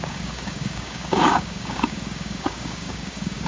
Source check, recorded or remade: remade